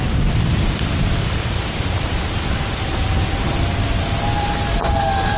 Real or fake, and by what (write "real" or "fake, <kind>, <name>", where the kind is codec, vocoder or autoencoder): real